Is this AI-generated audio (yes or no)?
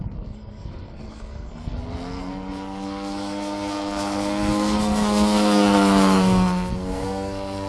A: yes